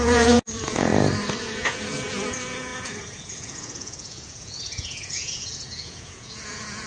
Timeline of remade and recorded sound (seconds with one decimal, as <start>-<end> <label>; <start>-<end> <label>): 0.0-0.9 remade; 0.9-1.4 recorded; 1.4-6.9 remade